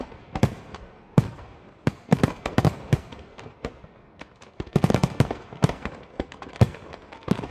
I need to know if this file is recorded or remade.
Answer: remade